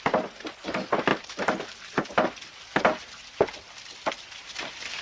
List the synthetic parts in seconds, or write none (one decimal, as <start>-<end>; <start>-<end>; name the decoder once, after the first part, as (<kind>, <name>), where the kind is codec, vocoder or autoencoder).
none